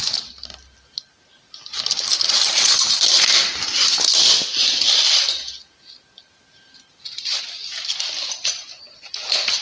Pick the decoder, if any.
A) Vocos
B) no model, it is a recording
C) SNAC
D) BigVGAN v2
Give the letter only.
B